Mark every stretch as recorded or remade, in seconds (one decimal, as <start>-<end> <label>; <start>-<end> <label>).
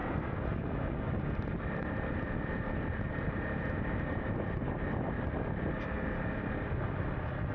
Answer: 0.0-7.5 recorded